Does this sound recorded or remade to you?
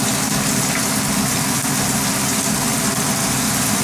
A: recorded